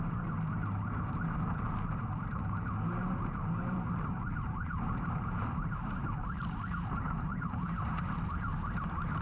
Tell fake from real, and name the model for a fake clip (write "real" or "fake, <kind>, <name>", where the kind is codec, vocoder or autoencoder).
fake, vocoder, BigVGAN v2